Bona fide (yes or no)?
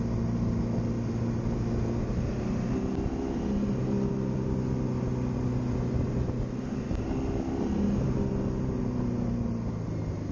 yes